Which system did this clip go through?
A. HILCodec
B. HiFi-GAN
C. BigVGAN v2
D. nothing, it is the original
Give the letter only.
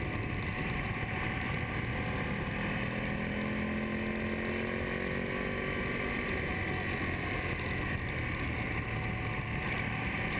D